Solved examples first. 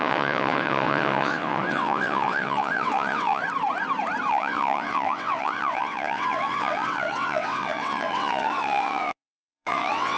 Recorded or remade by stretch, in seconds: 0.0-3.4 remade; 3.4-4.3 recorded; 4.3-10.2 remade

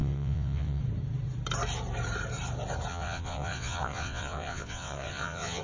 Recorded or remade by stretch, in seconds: 0.0-0.8 remade; 0.8-2.9 recorded; 2.9-5.6 remade

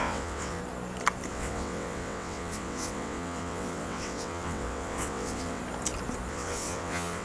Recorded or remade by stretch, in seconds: 0.0-0.6 remade; 0.6-1.3 recorded; 1.3-5.6 remade; 5.6-6.3 recorded; 6.3-7.2 remade

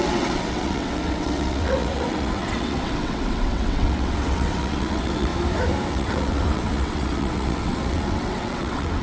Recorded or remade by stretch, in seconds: 0.0-5.3 remade; 5.3-5.9 recorded; 5.9-9.0 remade

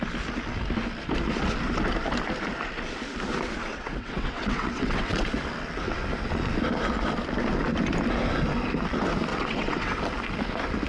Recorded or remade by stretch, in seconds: 0.0-3.7 recorded; 3.7-5.4 remade; 5.4-9.3 recorded; 9.3-10.0 remade; 10.0-10.9 recorded